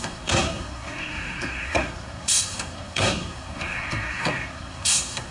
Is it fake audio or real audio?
fake